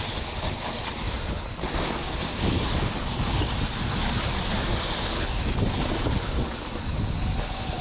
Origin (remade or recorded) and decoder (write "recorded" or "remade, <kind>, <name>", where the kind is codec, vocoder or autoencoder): recorded